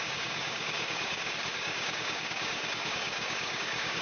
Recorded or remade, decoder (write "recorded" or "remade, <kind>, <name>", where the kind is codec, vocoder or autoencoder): remade, codec, DAC